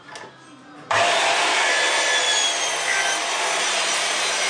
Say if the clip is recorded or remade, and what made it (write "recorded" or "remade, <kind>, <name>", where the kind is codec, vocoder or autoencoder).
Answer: recorded